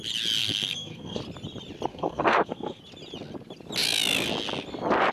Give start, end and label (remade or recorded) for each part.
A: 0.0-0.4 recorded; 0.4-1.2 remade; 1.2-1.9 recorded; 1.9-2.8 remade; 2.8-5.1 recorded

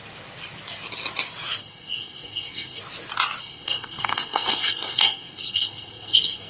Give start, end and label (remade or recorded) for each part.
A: 0.0-1.6 recorded; 1.6-2.8 remade; 2.8-3.4 recorded; 3.4-6.5 remade

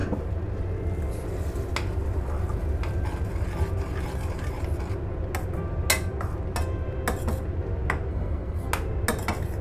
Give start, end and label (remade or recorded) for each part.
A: 0.0-8.1 recorded; 8.1-8.7 remade; 8.7-9.6 recorded

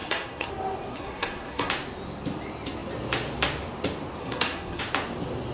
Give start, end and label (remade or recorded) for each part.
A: 0.0-0.5 remade; 0.5-0.9 recorded; 0.9-1.7 remade; 1.7-4.2 recorded; 4.2-4.8 remade; 4.8-5.5 recorded

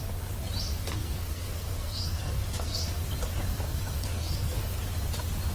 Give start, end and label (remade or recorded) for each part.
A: 0.0-0.7 recorded; 0.7-3.0 remade; 3.0-3.5 recorded; 3.5-4.8 remade; 4.8-5.5 recorded

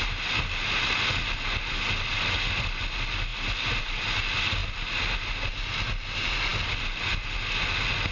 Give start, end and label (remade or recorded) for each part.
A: 0.0-8.1 recorded